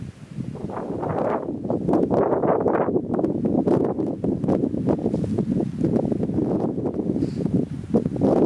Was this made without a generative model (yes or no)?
yes